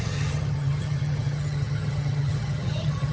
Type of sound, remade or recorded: remade